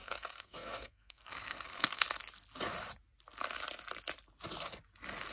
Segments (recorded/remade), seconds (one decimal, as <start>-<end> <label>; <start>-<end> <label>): 0.0-2.0 remade; 2.0-5.3 recorded